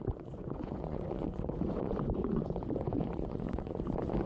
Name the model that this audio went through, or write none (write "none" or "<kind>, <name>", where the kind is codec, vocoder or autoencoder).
vocoder, Vocos